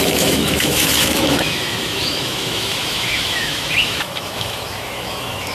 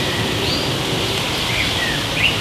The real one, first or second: second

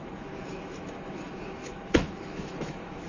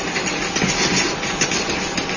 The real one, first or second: second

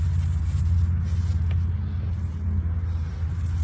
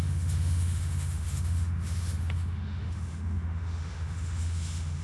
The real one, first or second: first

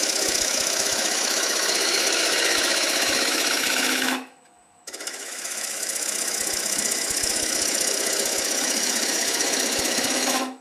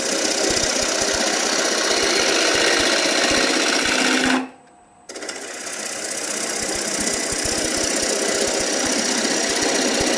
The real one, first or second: second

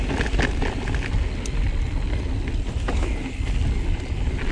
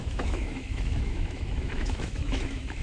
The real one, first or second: first